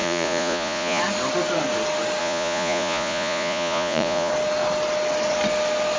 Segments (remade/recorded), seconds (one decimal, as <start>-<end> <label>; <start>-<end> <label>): 0.0-1.0 remade; 1.0-2.2 recorded; 2.2-4.3 remade; 4.3-6.0 recorded